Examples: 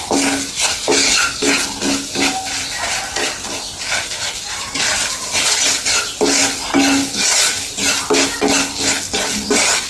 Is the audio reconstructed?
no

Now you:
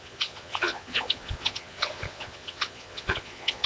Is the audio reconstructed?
yes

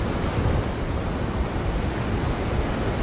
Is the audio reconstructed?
no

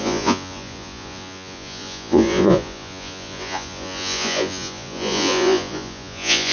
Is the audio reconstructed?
yes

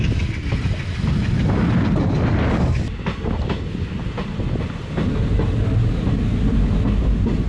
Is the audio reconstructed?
no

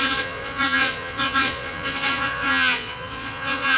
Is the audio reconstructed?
yes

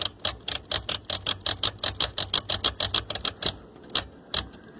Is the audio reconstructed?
no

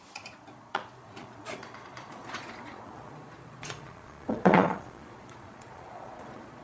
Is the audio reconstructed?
yes